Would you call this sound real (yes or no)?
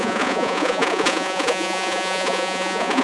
no